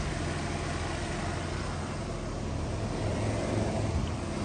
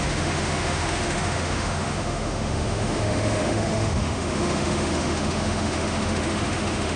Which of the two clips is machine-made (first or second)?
second